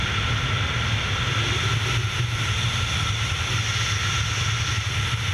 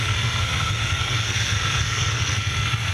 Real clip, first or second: first